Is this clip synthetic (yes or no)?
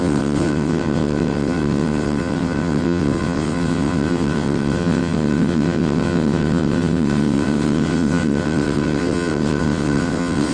yes